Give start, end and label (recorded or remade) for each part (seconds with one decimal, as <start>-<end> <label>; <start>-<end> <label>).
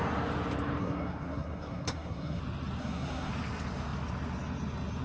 0.0-0.8 recorded; 0.8-2.4 remade; 2.4-2.8 recorded; 2.8-3.3 remade; 3.3-5.0 recorded